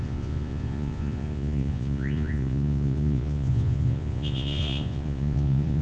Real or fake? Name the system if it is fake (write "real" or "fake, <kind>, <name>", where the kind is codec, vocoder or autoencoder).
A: fake, vocoder, Vocos